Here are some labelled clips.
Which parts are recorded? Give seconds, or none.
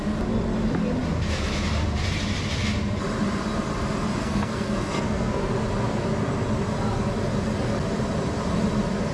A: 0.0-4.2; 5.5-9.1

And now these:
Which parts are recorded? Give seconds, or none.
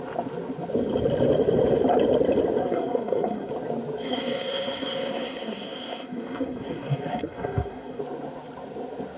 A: 0.0-2.6; 3.5-4.1; 8.0-9.2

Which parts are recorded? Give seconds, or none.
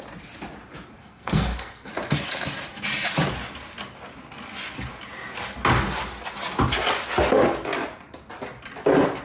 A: 0.0-1.0; 1.9-9.2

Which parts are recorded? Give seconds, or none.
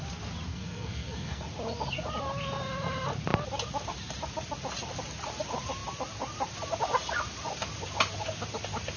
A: 0.0-0.5; 1.5-9.0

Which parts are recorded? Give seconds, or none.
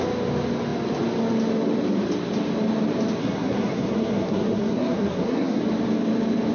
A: 0.0-3.2; 5.6-6.5